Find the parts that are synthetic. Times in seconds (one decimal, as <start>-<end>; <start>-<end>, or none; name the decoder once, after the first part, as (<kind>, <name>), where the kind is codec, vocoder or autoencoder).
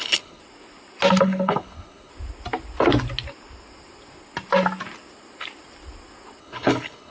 0.0-0.4 (codec, HILCodec); 1.2-2.1; 6.4-7.1